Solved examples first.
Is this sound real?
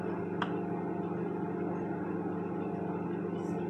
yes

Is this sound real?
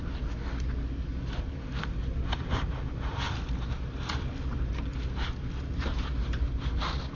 yes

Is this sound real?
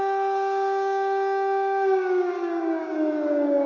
no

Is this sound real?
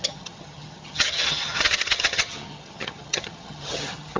no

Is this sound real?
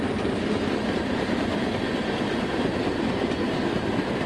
yes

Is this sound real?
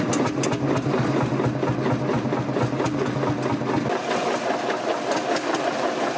yes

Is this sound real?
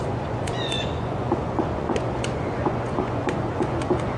no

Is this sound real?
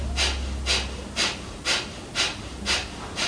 yes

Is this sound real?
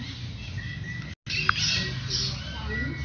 yes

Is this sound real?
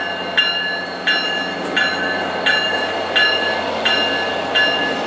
yes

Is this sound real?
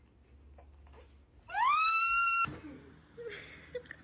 yes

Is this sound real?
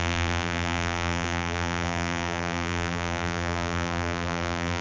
no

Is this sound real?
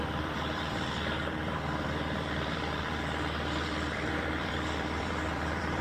no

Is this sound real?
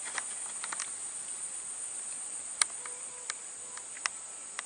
yes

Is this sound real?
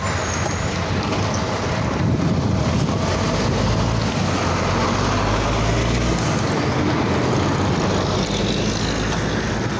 yes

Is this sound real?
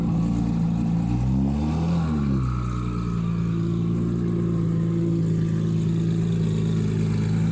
yes